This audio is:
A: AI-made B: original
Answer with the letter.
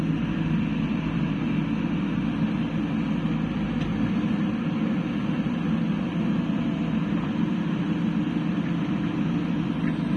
B